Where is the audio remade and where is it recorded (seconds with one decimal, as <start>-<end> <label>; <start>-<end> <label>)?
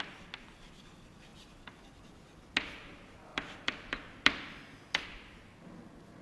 0.0-1.3 recorded; 1.3-2.4 remade; 2.4-3.3 recorded; 3.3-4.3 remade; 4.3-6.2 recorded